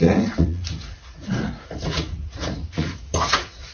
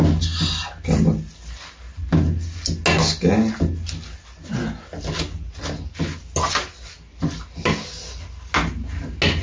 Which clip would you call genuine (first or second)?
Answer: second